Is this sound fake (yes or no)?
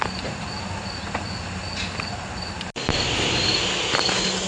no